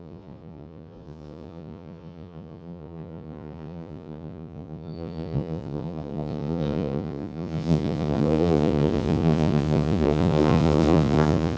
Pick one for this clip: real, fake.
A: fake